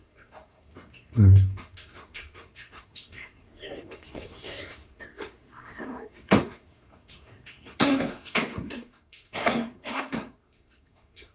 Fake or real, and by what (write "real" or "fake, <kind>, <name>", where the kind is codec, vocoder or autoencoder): fake, codec, SNAC